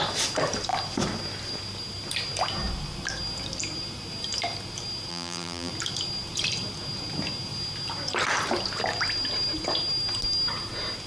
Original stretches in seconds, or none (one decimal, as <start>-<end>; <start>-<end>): 0.0-5.1; 5.7-11.1